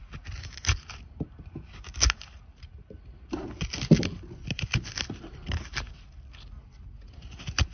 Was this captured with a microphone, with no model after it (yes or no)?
yes